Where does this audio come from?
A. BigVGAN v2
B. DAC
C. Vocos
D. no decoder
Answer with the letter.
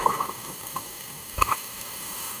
B